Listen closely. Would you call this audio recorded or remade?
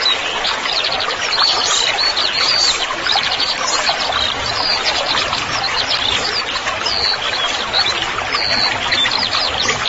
recorded